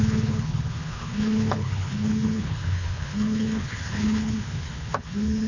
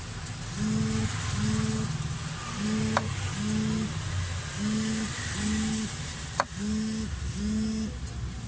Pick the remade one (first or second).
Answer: first